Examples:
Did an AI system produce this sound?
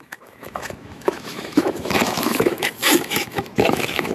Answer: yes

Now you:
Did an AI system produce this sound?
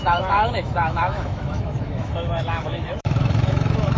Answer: yes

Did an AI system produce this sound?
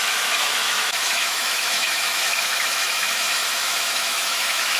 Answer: yes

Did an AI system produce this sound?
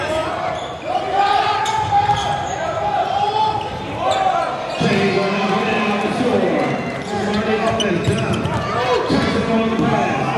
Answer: no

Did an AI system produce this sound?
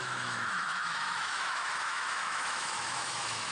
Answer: yes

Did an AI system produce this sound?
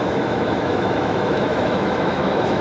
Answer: yes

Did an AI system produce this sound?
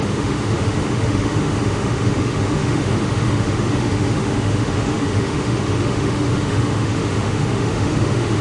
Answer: yes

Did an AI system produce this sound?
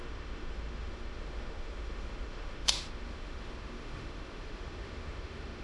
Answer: yes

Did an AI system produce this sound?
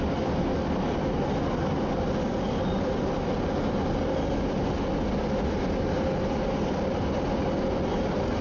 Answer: no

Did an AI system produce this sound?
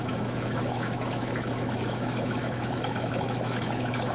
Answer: yes